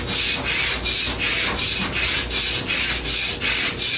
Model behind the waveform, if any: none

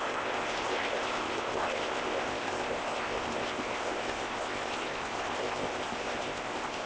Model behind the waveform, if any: codec, ZipCodec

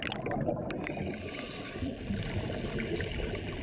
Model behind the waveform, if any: none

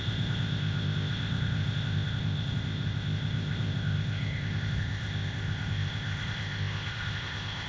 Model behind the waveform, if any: codec, ZipCodec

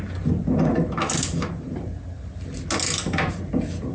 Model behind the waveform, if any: none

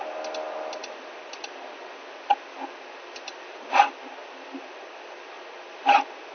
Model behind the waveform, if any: none